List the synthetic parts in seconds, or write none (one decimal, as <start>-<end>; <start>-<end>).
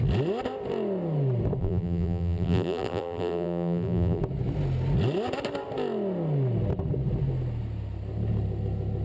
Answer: 1.6-4.2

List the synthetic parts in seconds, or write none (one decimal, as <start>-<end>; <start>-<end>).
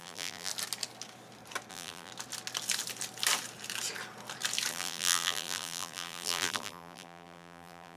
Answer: 0.0-0.5; 1.7-2.1; 4.7-8.0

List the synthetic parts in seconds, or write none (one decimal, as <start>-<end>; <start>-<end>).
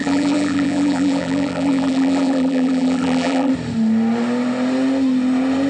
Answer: 0.0-3.5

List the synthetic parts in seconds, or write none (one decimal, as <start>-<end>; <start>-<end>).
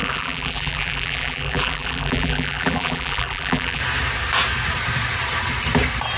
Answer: 0.0-3.8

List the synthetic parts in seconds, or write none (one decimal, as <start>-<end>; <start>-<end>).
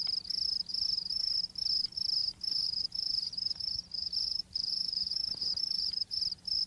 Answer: 0.7-1.3; 2.2-6.2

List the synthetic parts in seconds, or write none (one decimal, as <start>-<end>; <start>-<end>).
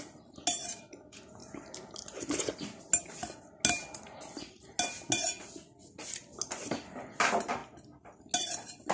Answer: 7.6-8.2